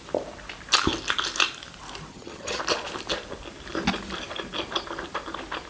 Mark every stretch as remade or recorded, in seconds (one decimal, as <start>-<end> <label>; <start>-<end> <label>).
0.0-2.1 recorded; 2.1-2.6 remade; 2.6-5.7 recorded